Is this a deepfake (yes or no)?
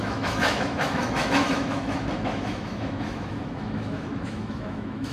yes